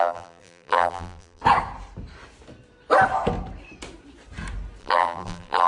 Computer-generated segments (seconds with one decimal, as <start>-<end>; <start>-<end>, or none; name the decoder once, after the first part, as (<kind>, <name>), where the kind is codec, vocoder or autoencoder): 0.0-1.4 (vocoder, BigVGAN v2); 4.8-5.7